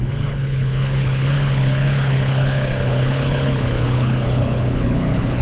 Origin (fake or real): fake